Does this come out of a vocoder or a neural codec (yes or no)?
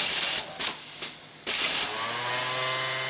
no